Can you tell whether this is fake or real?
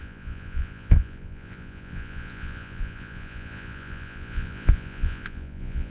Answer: fake